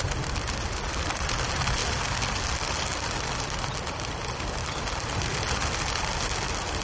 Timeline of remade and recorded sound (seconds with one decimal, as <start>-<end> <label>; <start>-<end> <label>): 0.0-6.8 recorded